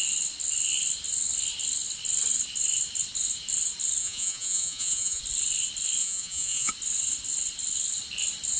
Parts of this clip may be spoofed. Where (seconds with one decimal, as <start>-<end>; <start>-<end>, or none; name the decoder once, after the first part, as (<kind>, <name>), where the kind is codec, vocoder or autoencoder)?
4.0-5.2 (vocoder, Vocos); 6.0-6.7